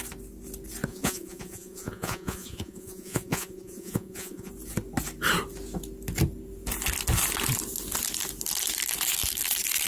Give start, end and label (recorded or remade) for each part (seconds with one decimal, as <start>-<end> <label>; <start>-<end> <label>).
0.0-0.9 recorded; 0.9-4.5 remade; 4.5-9.9 recorded

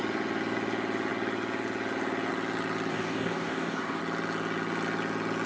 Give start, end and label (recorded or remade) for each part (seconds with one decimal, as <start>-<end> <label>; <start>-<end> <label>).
0.0-2.9 recorded; 2.9-4.0 remade; 4.0-5.5 recorded

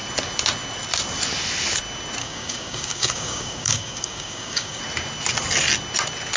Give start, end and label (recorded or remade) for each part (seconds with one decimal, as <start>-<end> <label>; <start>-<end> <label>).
0.0-2.2 recorded; 2.2-4.8 remade; 4.8-6.4 recorded